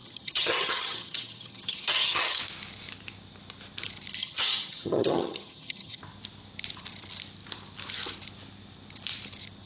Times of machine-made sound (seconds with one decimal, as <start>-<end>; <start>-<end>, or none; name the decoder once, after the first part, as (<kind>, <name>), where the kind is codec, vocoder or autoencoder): 0.0-2.4 (vocoder, HiFi-GAN); 4.2-6.0